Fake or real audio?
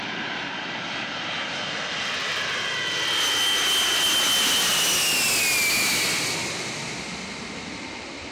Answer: real